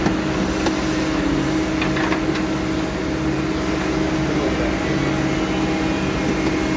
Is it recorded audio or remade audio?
recorded